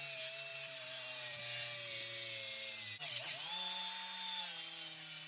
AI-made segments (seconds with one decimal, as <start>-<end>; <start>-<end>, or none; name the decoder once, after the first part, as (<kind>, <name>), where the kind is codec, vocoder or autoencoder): 0.5-1.4 (vocoder, BigVGAN v2)